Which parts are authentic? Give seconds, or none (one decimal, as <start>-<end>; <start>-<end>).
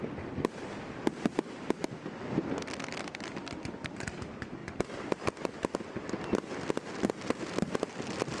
0.0-8.4